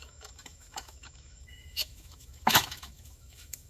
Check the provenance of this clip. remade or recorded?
remade